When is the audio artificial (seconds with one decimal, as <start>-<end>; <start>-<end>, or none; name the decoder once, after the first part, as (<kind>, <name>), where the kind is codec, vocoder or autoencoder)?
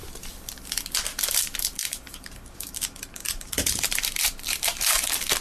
1.8-5.0 (vocoder, BigVGAN v2)